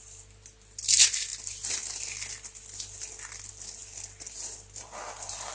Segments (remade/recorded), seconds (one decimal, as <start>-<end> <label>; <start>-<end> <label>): 0.0-5.5 recorded